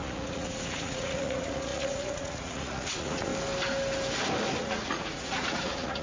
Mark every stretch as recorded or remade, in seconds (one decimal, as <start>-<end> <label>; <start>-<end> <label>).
0.0-3.3 remade; 3.3-4.6 recorded; 4.6-6.0 remade